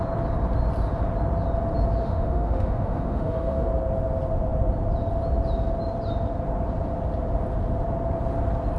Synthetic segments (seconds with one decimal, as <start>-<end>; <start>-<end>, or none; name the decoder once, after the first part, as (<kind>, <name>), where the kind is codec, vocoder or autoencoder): 2.0-3.7 (autoencoder, DAC-VAE)